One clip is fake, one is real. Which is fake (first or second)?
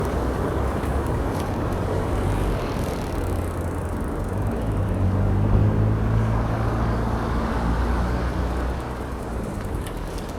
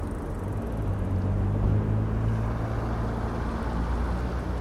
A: first